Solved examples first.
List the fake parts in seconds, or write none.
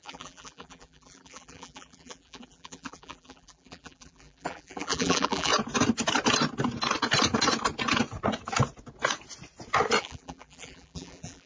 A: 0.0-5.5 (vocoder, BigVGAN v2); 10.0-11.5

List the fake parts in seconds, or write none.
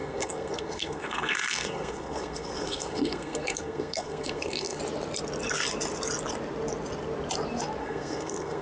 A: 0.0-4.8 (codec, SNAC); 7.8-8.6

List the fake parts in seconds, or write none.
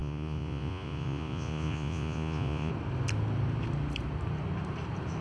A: 0.0-2.7 (vocoder, Vocos)